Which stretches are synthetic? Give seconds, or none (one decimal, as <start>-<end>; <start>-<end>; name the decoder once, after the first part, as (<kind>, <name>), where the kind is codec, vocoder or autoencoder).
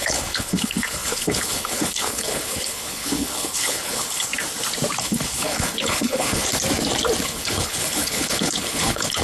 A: 0.0-4.3 (codec, HILCodec); 5.0-6.5; 7.2-9.2